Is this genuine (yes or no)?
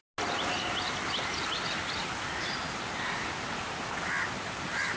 yes